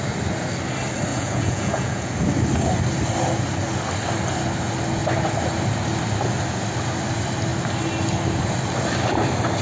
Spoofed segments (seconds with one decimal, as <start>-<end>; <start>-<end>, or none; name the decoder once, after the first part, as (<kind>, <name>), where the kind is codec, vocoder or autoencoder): 1.1-2.1 (vocoder, Vocos)